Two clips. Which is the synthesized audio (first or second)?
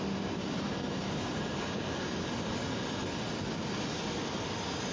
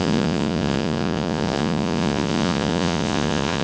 second